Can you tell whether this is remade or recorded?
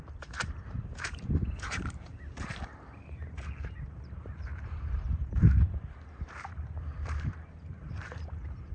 remade